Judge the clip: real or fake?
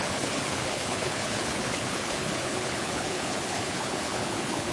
fake